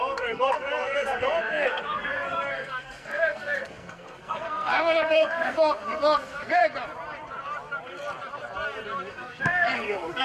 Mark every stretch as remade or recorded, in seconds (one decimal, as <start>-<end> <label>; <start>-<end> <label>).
0.0-6.6 remade; 6.6-9.1 recorded; 9.1-10.2 remade